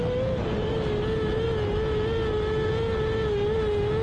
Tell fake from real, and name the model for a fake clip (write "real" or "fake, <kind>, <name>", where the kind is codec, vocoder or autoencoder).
real